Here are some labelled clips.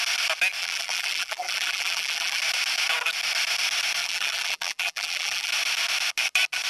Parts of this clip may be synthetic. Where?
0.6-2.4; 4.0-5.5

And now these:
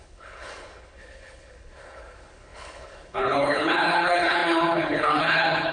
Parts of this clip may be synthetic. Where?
0.0-5.7

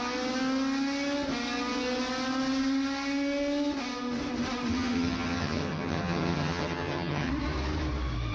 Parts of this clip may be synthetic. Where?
4.7-7.3

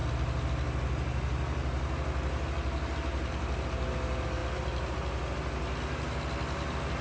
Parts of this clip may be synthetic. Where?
none